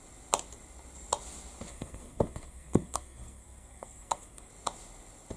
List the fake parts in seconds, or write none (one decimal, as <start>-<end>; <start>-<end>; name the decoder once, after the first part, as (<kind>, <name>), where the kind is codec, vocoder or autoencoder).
1.7-4.5 (codec, SNAC)